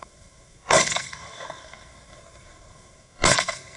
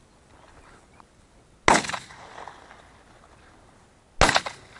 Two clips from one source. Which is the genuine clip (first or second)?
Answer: second